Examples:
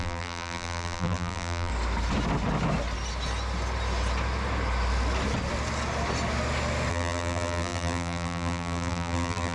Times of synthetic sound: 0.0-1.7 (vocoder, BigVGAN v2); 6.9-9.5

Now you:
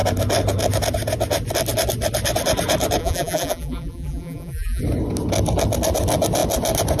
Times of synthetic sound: 3.0-4.8 (vocoder, BigVGAN v2)

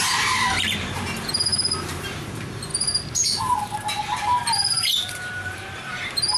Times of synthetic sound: 0.0-2.7 (vocoder, BigVGAN v2); 3.4-6.4